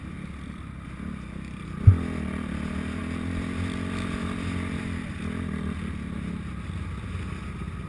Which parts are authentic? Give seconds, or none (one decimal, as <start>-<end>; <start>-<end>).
0.0-7.9